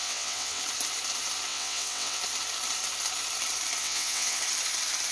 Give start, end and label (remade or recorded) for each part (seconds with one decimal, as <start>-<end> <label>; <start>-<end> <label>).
0.0-0.6 remade; 0.6-1.5 recorded; 1.5-2.2 remade; 2.2-3.8 recorded; 3.8-4.4 remade; 4.4-5.1 recorded